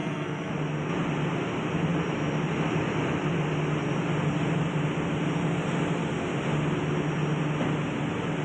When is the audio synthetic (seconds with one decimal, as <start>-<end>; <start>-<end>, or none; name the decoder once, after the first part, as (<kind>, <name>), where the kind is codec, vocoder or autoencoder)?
0.0-0.5 (codec, SNAC)